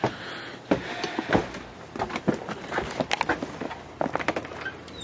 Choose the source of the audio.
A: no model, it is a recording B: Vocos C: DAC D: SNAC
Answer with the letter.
A